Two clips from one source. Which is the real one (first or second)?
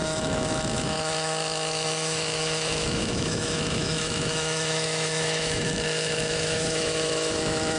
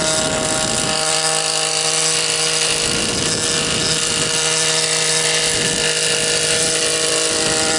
second